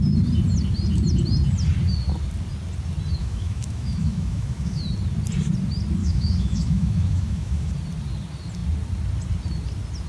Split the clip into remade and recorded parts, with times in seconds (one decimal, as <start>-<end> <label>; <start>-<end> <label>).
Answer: 0.0-3.2 recorded; 3.2-4.8 remade; 4.8-6.0 recorded; 6.0-7.7 remade; 7.7-10.1 recorded